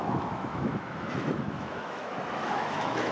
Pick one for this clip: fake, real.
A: fake